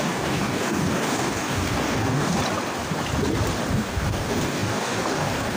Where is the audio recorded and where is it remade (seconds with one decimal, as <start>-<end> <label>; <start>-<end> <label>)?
0.0-2.4 remade; 2.4-3.7 recorded; 3.7-5.6 remade